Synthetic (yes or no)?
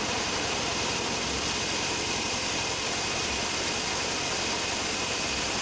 yes